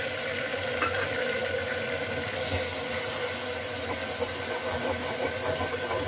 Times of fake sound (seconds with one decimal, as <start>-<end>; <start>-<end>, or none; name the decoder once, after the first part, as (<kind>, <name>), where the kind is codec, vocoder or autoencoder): none